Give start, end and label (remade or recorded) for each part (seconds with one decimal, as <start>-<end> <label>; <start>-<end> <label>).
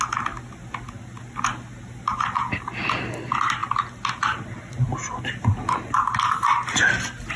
0.0-7.4 recorded